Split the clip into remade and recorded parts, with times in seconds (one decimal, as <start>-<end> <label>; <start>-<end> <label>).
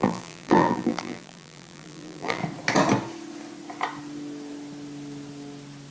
0.0-2.4 remade; 2.4-5.9 recorded